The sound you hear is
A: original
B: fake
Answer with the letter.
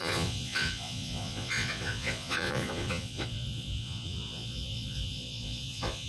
B